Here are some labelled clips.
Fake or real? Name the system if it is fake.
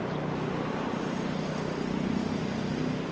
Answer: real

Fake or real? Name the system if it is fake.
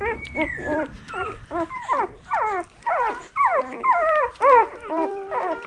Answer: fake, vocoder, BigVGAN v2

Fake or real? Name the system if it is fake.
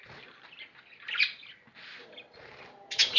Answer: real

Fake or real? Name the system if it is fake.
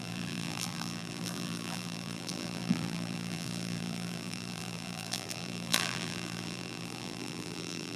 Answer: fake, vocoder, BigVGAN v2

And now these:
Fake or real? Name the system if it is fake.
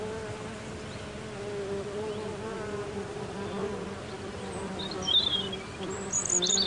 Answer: real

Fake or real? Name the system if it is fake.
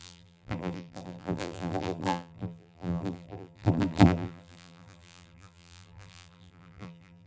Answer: fake, vocoder, BigVGAN v2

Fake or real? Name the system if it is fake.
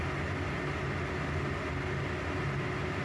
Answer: real